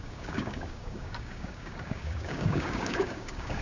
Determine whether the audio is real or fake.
fake